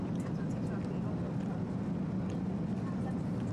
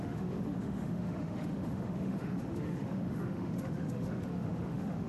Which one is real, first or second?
first